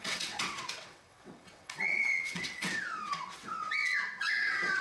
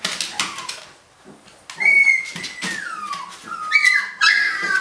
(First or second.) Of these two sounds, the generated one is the first